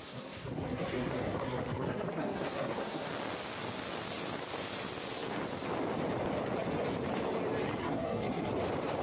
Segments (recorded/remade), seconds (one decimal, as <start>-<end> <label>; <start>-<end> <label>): 0.0-3.1 remade; 3.1-7.8 recorded; 7.8-8.5 remade; 8.5-9.0 recorded